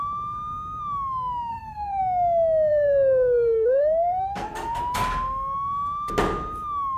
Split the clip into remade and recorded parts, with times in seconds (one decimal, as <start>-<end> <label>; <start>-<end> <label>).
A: 0.0-1.5 recorded; 1.5-2.0 remade; 2.0-2.7 recorded; 2.7-4.8 remade; 4.8-7.0 recorded

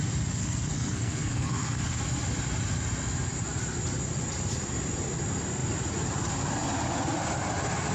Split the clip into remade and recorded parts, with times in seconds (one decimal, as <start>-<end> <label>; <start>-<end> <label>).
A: 0.0-0.4 recorded; 0.4-2.0 remade; 2.0-7.9 recorded

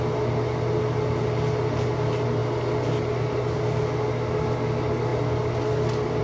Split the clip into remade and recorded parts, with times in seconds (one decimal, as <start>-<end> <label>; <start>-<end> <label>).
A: 0.0-6.2 recorded

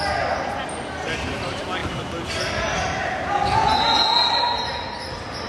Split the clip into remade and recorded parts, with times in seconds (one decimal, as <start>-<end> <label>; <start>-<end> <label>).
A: 0.0-5.5 recorded

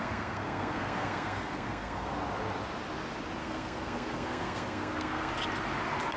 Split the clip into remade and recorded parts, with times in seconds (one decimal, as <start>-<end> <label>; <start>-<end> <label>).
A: 0.0-2.1 remade; 2.1-3.4 recorded; 3.4-5.3 remade; 5.3-6.2 recorded

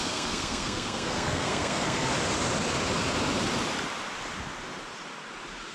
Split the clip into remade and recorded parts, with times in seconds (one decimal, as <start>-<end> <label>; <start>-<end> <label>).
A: 0.0-2.1 remade; 2.1-5.7 recorded

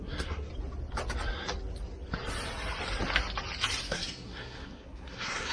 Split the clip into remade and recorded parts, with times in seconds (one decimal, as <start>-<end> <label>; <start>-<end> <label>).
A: 0.0-0.5 remade; 0.5-3.8 recorded; 3.8-5.5 remade

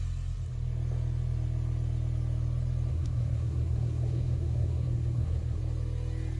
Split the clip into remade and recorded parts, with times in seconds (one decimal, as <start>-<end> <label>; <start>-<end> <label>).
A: 0.0-2.9 recorded; 2.9-5.6 remade; 5.6-6.4 recorded